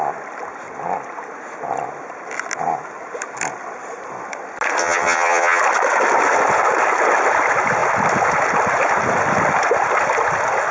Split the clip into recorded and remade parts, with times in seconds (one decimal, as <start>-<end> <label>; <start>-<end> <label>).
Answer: 0.0-4.8 recorded; 4.8-5.6 remade; 5.6-10.7 recorded